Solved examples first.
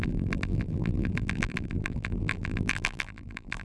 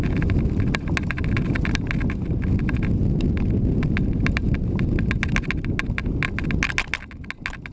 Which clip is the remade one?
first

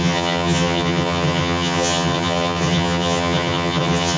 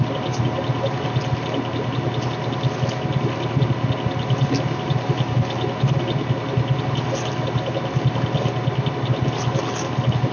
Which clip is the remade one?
first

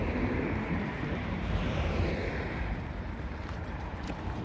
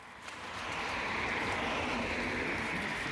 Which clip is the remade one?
first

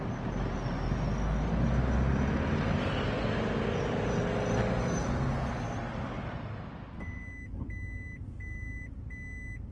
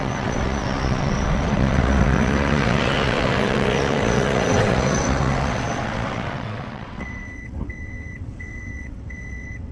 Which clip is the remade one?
second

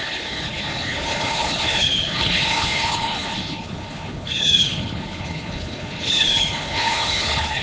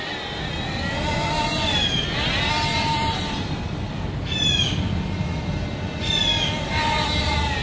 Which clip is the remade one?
first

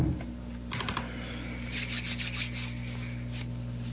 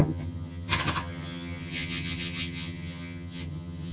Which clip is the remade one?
second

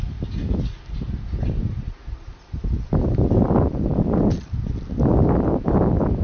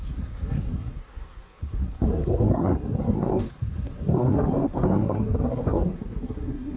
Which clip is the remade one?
second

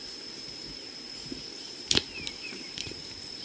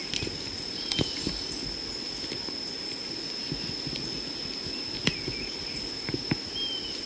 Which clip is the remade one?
first